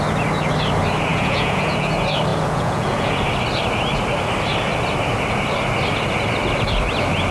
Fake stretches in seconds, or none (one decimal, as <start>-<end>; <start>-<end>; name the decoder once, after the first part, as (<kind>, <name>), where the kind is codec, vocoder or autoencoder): 1.1-1.9 (vocoder, Vocos); 2.3-3.1